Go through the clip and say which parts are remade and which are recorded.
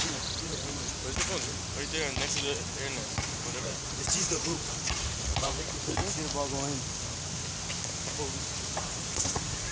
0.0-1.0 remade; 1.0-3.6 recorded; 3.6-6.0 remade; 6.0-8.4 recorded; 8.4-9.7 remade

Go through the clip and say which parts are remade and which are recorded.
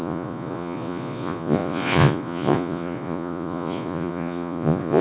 0.0-5.0 remade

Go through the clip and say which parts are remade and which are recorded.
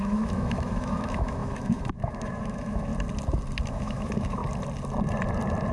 0.0-2.9 remade; 2.9-3.7 recorded; 3.7-4.4 remade; 4.4-5.7 recorded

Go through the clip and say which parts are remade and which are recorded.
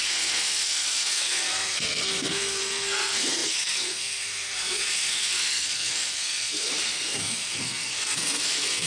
0.0-8.9 remade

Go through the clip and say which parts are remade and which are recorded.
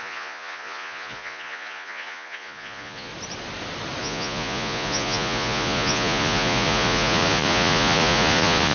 0.0-3.1 remade; 3.1-4.0 recorded; 4.0-8.7 remade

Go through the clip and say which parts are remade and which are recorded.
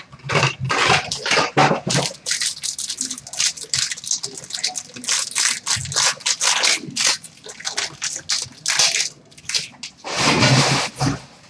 0.0-11.5 recorded